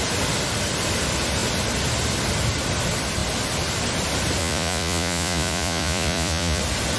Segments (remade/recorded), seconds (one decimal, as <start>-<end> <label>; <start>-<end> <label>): 0.0-4.4 recorded; 4.4-6.6 remade; 6.6-7.0 recorded